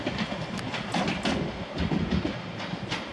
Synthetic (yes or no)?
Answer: no